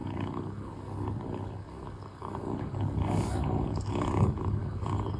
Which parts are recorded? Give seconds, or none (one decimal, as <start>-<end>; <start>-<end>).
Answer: none